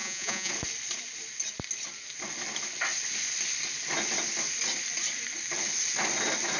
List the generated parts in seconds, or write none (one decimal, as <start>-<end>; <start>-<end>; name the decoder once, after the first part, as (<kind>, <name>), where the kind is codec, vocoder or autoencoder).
0.0-0.5 (vocoder, Vocos)